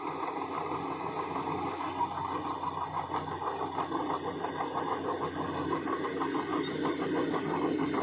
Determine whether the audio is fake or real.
real